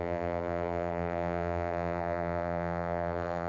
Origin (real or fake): fake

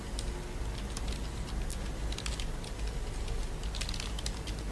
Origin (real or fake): real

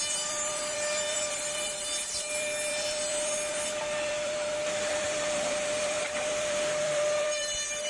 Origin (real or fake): fake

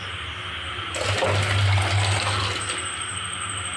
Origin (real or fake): real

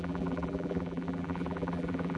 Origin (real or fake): fake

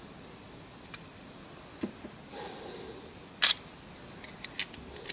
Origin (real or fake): real